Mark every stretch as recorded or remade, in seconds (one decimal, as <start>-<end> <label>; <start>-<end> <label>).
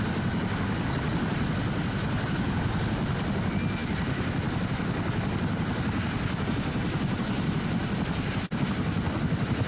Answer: 0.0-9.7 recorded